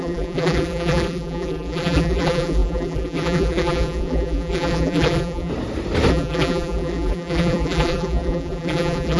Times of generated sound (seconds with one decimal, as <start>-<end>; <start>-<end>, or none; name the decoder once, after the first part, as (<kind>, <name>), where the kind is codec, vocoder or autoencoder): 0.0-5.5 (vocoder, BigVGAN v2); 6.1-9.2